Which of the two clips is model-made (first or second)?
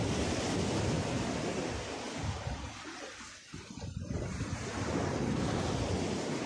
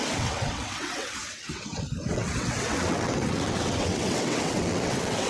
second